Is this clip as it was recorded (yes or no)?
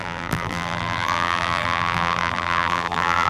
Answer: no